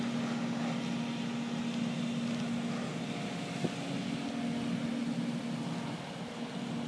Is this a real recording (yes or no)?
yes